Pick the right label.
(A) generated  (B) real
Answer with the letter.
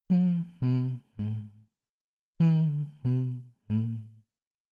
B